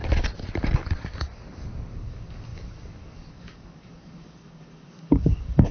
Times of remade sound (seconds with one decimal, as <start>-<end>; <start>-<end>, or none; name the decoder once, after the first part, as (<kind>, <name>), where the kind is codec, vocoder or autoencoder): 2.0-5.7 (codec, DAC)